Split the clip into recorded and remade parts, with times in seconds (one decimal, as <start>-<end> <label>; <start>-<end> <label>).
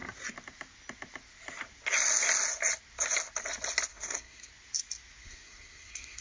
0.0-3.9 recorded; 3.9-4.5 remade; 4.5-5.2 recorded; 5.2-6.2 remade